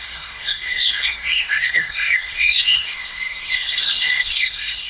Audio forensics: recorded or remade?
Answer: remade